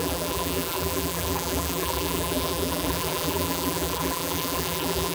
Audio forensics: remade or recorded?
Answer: remade